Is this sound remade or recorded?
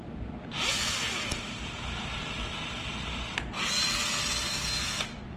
recorded